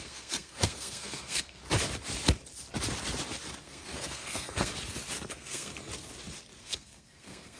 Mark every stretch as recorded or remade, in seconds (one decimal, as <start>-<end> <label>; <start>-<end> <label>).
0.0-1.6 remade; 1.6-3.6 recorded; 3.6-4.7 remade; 4.7-5.3 recorded; 5.3-5.7 remade; 5.7-6.6 recorded; 6.6-7.6 remade